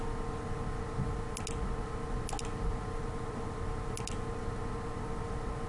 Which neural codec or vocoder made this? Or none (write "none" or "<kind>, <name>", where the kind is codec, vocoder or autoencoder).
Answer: none